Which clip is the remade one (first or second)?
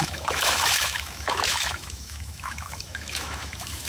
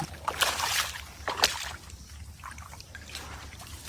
first